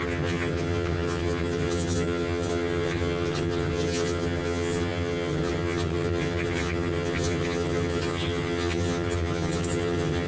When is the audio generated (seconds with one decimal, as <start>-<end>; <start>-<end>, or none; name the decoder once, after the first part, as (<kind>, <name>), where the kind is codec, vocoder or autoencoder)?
0.0-10.3 (vocoder, HiFi-GAN)